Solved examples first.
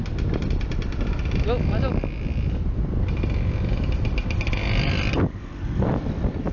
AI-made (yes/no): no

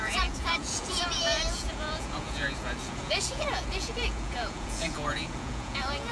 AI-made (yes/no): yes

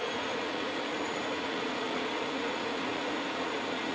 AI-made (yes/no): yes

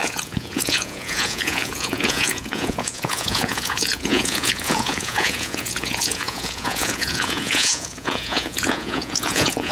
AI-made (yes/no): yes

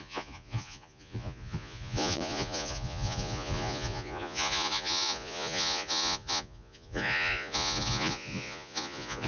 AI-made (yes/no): yes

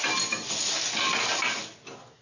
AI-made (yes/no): no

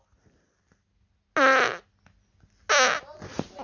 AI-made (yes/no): no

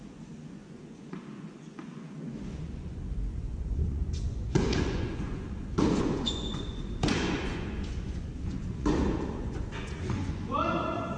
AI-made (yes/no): yes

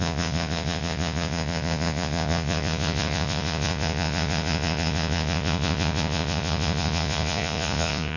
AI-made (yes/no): yes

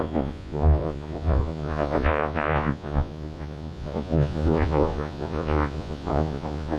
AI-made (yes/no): yes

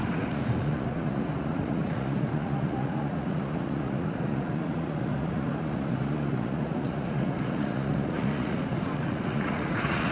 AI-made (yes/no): yes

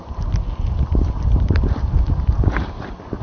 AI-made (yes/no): no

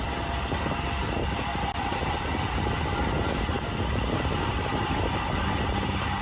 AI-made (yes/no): no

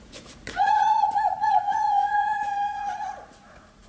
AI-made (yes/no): yes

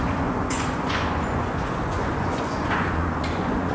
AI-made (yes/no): yes